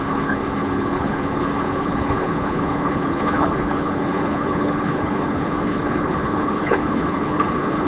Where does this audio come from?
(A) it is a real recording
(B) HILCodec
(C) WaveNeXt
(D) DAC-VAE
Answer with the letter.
B